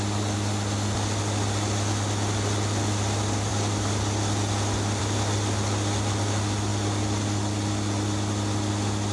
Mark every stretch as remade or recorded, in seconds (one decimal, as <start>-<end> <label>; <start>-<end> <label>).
0.0-3.5 recorded; 3.5-5.0 remade; 5.0-6.7 recorded; 6.7-8.7 remade; 8.7-9.1 recorded